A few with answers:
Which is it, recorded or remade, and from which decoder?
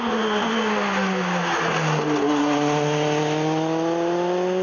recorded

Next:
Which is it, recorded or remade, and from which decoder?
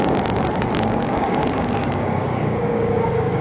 remade, codec, DAC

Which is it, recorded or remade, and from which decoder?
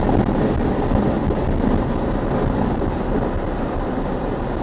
recorded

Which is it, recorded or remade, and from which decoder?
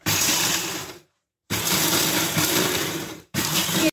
remade, vocoder, BigVGAN v2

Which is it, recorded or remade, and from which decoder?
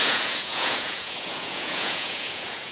remade, vocoder, Vocos